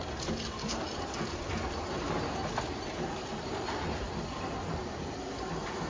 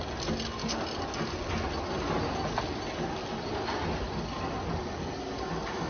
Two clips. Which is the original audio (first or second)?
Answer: second